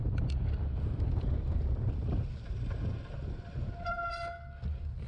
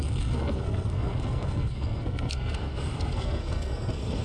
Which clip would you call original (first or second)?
first